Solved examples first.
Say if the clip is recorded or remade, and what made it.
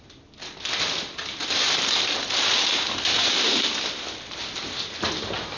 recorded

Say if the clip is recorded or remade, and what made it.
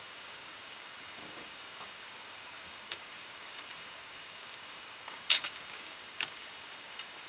remade, codec, DAC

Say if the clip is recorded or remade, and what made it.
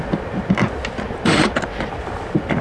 recorded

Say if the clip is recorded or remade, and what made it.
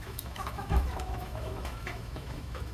remade, autoencoder, DAC-VAE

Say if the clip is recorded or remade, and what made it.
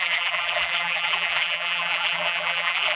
remade, vocoder, BigVGAN v2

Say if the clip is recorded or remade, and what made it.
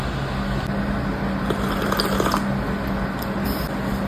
recorded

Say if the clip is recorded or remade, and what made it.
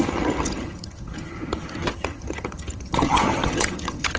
remade, vocoder, HiFi-GAN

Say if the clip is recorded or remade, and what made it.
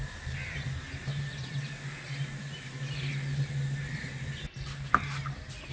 recorded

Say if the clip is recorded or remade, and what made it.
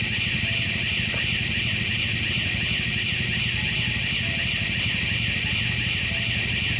recorded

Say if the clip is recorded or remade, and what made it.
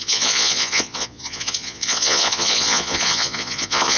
remade, vocoder, Vocos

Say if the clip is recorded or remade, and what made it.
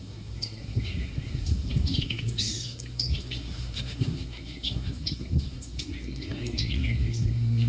remade, codec, SNAC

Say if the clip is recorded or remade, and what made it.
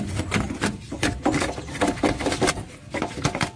remade, vocoder, BigVGAN v2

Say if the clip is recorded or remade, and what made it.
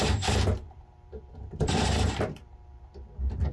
remade, vocoder, BigVGAN v2